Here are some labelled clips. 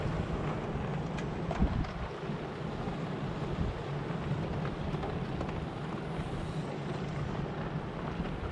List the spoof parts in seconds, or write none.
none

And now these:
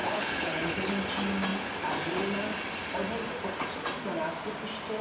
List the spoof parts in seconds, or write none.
0.0-0.9 (codec, HILCodec)